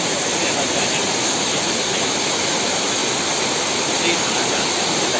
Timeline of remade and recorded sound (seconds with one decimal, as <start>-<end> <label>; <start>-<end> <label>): 0.0-3.0 remade; 3.0-4.8 recorded; 4.8-5.2 remade